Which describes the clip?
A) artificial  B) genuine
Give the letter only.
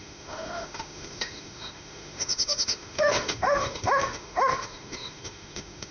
A